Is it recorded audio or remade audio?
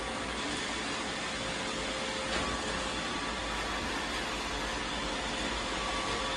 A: recorded